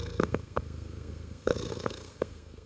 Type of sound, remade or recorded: remade